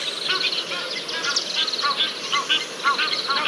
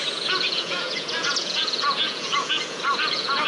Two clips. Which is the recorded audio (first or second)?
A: first